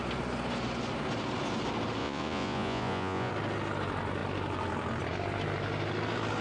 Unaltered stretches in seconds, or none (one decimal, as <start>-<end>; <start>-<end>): 0.0-2.0; 3.3-6.4